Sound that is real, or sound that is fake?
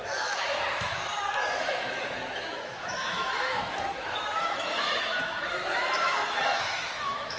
fake